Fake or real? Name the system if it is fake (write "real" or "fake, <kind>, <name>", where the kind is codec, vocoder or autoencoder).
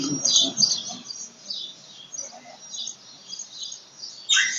real